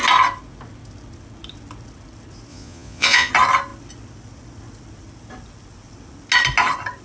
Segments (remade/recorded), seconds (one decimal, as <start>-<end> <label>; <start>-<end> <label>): 0.0-2.5 recorded; 2.5-3.3 remade; 3.3-7.0 recorded